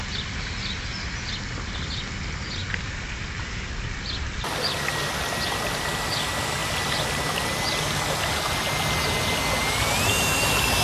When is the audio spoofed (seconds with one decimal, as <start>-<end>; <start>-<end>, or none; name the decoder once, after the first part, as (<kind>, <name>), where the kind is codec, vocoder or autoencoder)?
none